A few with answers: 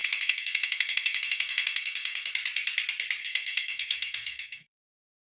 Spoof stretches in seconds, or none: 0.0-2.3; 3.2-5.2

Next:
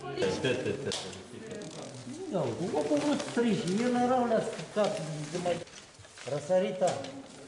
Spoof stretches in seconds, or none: none